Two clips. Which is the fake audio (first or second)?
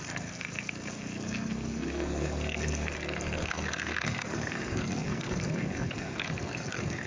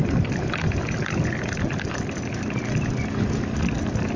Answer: first